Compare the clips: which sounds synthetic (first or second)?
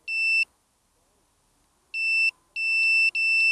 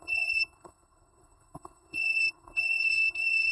second